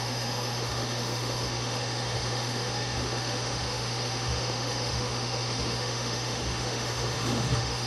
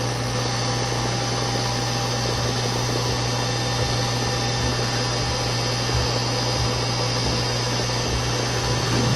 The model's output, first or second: first